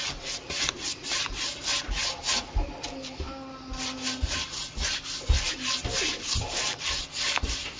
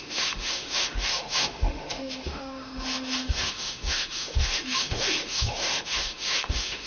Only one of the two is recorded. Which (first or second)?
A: first